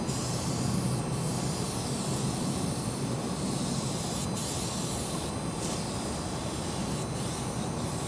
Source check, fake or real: real